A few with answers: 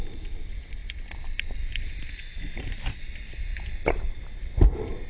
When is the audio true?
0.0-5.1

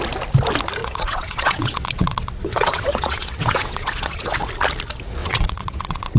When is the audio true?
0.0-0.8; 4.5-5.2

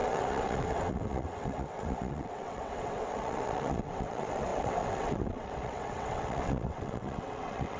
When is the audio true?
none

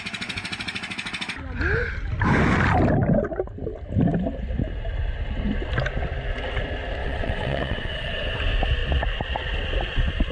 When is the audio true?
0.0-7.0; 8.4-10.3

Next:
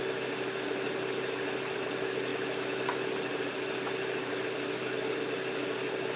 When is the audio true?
0.0-6.2

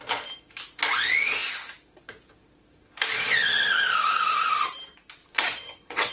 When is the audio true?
0.0-5.2

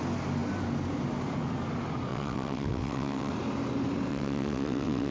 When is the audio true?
0.0-2.1; 3.3-4.1